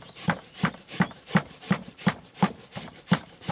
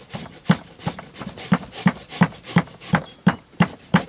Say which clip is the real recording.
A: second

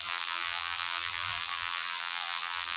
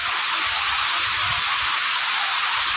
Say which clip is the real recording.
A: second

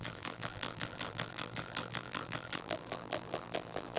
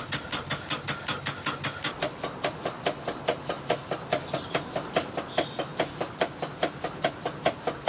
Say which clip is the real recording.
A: second